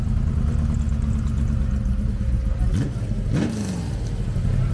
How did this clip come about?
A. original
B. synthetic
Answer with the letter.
A